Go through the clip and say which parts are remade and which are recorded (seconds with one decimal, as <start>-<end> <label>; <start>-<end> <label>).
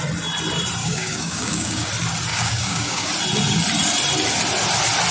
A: 0.0-0.8 recorded; 0.8-1.9 remade; 1.9-2.3 recorded; 2.3-3.1 remade; 3.1-5.1 recorded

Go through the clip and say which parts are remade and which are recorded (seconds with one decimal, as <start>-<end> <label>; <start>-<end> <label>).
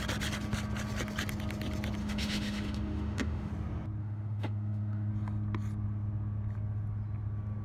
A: 0.0-2.0 recorded; 2.0-3.5 remade; 3.5-4.0 recorded; 4.0-5.1 remade; 5.1-7.6 recorded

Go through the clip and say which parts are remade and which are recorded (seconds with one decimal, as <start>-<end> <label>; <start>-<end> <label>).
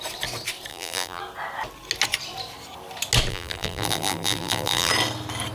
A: 0.0-0.7 recorded; 0.7-1.2 remade; 1.2-3.3 recorded; 3.3-4.9 remade; 4.9-5.5 recorded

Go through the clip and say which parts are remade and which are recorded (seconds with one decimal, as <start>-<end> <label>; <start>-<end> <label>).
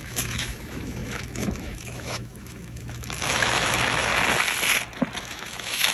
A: 0.0-4.1 remade; 4.1-5.2 recorded; 5.2-5.9 remade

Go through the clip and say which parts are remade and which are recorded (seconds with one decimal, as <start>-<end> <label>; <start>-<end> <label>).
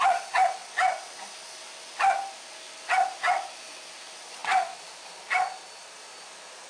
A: 0.0-0.6 recorded; 0.6-1.8 remade; 1.8-4.4 recorded; 4.4-6.0 remade; 6.0-6.7 recorded